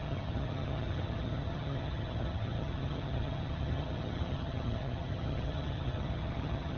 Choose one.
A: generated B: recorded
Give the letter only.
A